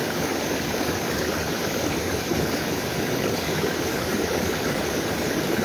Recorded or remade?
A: remade